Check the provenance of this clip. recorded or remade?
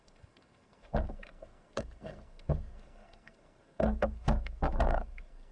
remade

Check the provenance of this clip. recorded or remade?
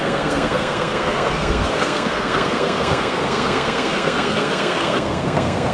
remade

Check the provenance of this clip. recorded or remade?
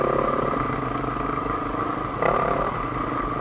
recorded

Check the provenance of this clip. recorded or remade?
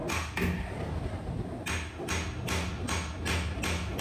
recorded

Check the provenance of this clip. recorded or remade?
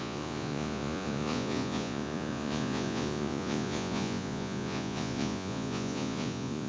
remade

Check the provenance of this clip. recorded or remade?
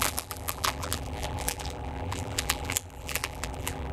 remade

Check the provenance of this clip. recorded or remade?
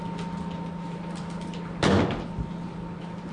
recorded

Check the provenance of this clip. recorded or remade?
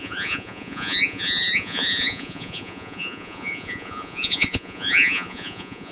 remade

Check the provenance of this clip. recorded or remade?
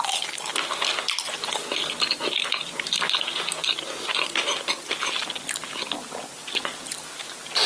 recorded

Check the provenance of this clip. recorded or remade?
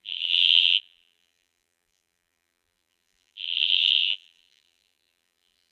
remade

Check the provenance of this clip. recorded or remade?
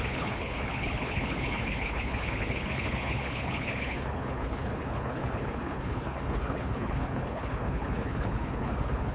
remade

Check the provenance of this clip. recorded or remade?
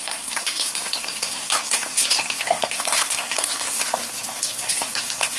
remade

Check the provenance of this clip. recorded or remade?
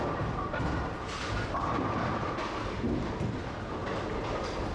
recorded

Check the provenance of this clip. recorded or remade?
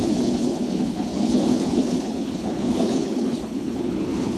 remade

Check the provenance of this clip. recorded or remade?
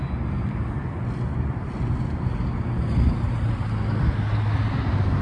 recorded